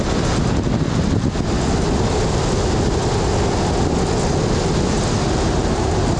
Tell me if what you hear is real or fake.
real